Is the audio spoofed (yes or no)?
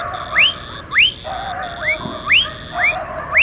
no